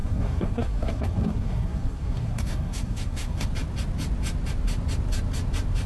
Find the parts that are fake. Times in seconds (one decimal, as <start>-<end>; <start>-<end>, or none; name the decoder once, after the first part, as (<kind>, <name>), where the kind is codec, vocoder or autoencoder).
0.0-3.5 (codec, SNAC)